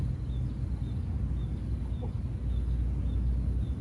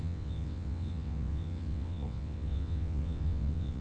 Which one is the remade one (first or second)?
second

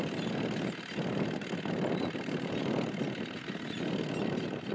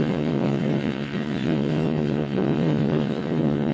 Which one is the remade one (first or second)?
second